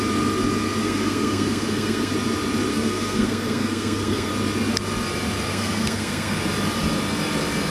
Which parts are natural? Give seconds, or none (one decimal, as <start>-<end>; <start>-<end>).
0.0-0.8; 2.1-2.7; 4.3-5.5; 6.4-7.7